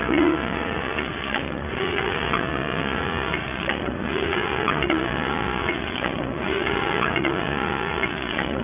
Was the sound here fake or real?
fake